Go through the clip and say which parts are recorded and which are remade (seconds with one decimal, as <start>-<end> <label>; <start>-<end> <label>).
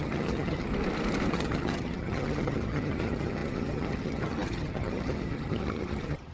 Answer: 0.0-0.7 remade; 0.7-1.3 recorded; 1.3-6.3 remade